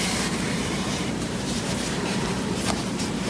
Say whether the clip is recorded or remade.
remade